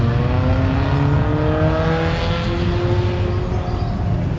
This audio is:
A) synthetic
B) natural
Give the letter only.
B